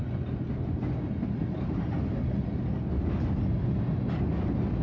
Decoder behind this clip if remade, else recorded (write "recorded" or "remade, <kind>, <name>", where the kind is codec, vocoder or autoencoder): recorded